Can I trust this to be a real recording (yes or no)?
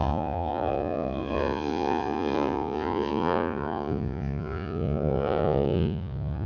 no